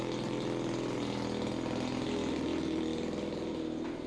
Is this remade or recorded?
recorded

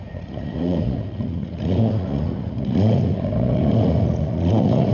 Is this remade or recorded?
remade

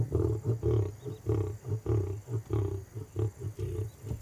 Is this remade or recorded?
recorded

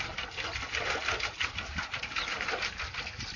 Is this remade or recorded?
recorded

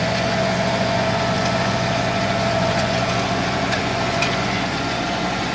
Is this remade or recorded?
remade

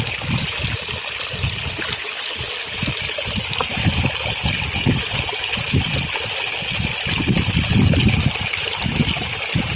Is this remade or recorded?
recorded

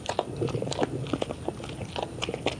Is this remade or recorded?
recorded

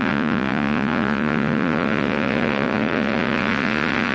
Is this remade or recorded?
remade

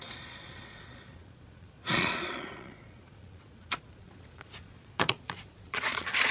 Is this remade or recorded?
remade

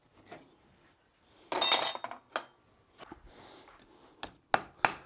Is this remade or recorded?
recorded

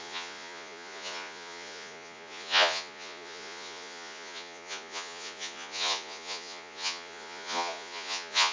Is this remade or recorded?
remade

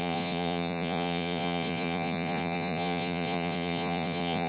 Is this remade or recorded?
remade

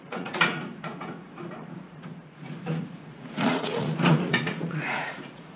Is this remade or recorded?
remade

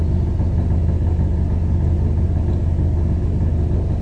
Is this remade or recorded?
recorded